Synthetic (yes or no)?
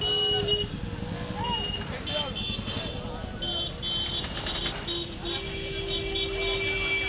no